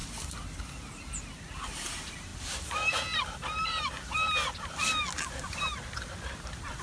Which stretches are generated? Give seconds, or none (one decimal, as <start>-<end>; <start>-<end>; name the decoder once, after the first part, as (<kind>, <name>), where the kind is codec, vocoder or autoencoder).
none